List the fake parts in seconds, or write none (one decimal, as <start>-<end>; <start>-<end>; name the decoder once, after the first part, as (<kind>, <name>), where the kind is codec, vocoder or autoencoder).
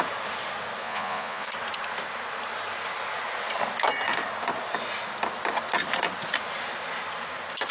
0.8-1.5 (vocoder, Vocos)